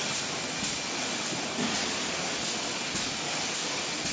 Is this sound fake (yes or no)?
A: no